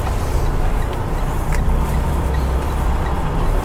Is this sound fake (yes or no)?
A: yes